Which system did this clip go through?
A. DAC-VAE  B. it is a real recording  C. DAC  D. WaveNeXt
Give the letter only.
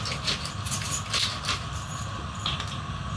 B